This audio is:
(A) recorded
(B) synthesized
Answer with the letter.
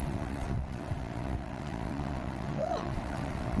B